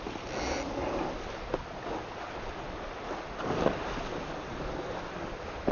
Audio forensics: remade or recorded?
recorded